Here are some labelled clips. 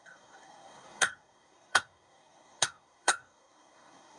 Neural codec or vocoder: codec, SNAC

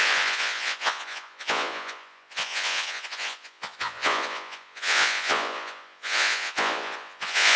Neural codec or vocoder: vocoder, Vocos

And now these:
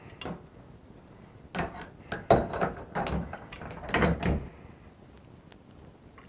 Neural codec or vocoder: none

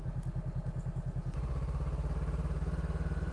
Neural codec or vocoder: none